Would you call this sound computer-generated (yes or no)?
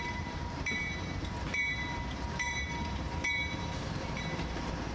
yes